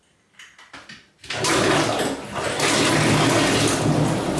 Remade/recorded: recorded